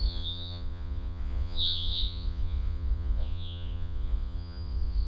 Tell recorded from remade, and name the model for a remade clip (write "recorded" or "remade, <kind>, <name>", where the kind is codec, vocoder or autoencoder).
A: remade, vocoder, Vocos